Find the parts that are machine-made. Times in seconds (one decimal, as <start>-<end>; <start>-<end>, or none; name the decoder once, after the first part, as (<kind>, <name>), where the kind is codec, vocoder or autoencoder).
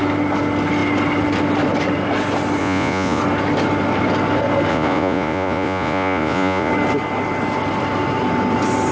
2.6-3.2 (vocoder, Vocos); 4.7-6.7